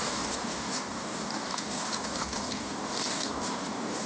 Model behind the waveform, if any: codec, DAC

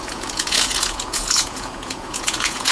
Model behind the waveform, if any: vocoder, Vocos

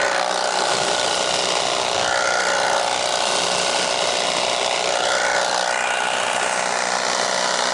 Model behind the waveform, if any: none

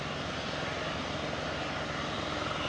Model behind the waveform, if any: none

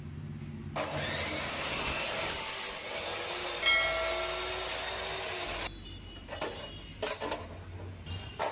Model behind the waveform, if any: none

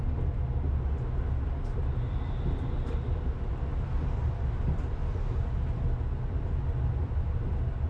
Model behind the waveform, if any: none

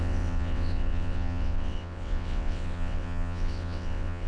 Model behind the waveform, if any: vocoder, WaveNeXt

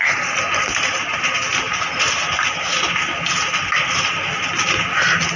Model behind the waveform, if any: none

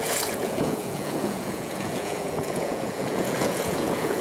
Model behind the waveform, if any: vocoder, Vocos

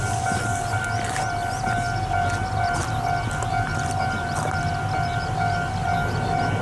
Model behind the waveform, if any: none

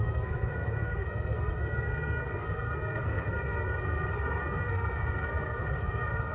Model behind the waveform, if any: codec, SNAC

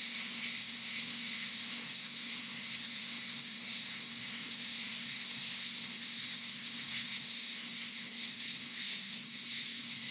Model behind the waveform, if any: codec, SNAC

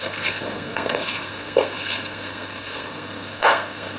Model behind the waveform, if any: codec, SNAC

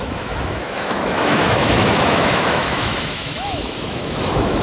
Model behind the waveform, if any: autoencoder, DAC-VAE